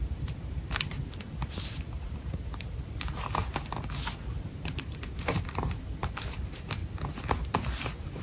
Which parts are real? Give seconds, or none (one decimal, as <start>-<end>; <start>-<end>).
3.4-4.3; 6.8-7.5